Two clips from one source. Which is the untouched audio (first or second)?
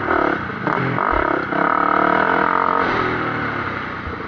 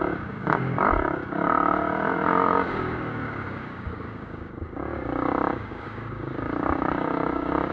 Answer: first